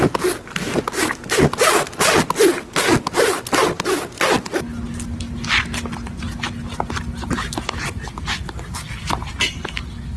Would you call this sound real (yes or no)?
yes